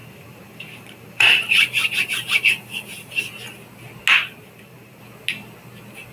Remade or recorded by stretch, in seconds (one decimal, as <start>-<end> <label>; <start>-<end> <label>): 0.0-3.2 remade; 3.2-4.1 recorded; 4.1-5.0 remade; 5.0-6.1 recorded